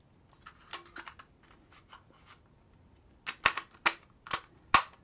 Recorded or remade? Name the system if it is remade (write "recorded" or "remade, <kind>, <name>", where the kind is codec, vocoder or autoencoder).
recorded